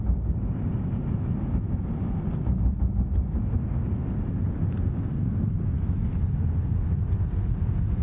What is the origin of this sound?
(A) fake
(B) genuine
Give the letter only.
B